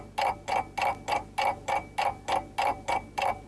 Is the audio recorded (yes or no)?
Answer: yes